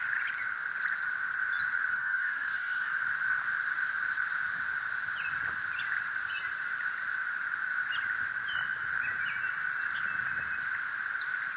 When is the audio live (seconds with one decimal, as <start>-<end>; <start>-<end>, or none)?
0.0-1.9; 2.9-11.6